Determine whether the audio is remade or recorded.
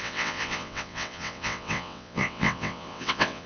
remade